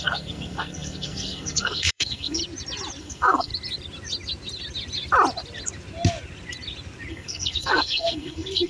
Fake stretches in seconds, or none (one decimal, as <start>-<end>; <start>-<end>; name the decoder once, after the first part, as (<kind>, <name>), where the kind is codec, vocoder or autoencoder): 0.0-2.4 (codec, SNAC); 3.0-3.5; 7.1-8.7